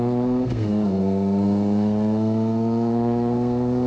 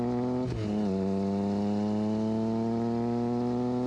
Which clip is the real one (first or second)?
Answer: second